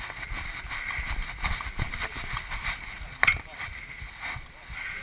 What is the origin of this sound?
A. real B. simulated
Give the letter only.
A